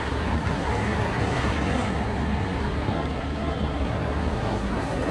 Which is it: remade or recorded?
remade